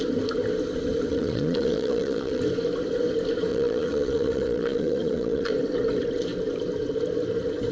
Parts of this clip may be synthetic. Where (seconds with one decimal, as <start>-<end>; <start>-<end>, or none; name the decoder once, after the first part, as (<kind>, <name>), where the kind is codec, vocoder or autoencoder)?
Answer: 1.1-2.4 (vocoder, Vocos); 3.5-5.5